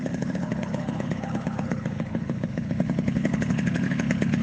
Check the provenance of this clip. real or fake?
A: fake